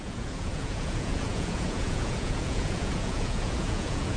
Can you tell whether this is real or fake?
fake